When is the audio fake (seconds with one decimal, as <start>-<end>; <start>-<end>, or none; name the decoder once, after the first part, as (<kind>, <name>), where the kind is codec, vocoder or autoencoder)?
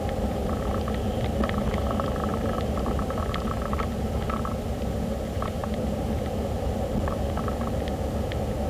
2.3-3.2 (vocoder, BigVGAN v2); 5.6-6.3